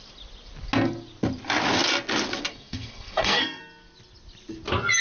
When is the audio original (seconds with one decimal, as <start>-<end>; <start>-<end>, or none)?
0.0-2.5; 3.6-5.0